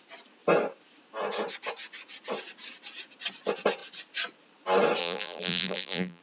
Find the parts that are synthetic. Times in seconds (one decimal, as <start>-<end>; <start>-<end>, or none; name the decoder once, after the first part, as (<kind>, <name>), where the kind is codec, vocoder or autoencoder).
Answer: 5.0-6.2 (vocoder, BigVGAN v2)